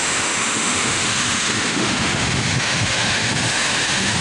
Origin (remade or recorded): remade